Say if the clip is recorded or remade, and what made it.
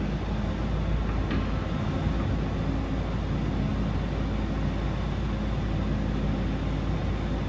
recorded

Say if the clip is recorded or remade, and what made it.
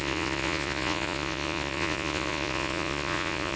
remade, vocoder, Vocos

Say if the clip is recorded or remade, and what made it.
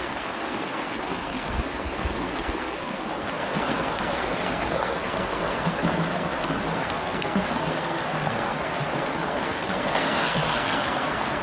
remade, codec, SNAC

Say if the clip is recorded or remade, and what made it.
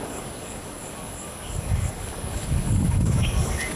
remade, codec, DAC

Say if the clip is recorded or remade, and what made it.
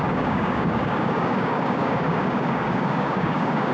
remade, codec, DAC